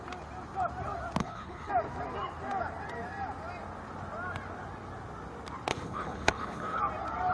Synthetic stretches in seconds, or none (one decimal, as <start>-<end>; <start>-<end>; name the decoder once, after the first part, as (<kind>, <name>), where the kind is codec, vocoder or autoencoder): 1.2-1.7 (codec, HILCodec); 5.7-6.8

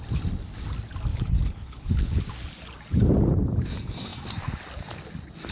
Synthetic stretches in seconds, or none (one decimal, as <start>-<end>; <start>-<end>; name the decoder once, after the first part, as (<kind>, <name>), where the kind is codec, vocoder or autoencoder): 1.1-2.2 (codec, HILCodec)

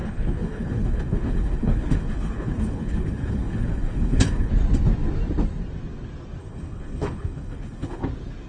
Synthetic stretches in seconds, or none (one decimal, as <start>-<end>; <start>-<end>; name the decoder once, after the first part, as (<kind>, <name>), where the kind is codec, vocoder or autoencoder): 0.0-4.5 (codec, HILCodec); 6.4-8.0

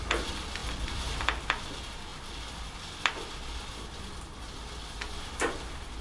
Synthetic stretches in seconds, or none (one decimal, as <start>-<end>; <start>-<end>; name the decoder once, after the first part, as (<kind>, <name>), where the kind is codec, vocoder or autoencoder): none

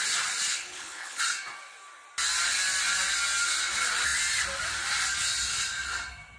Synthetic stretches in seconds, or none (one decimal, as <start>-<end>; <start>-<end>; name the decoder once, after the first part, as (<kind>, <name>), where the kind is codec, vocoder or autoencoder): 0.5-1.2 (codec, HILCodec)